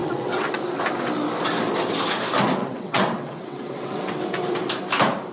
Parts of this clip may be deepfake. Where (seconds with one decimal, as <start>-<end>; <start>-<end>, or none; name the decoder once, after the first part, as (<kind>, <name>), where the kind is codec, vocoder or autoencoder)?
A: 0.0-0.6 (vocoder, WaveNeXt); 2.6-4.2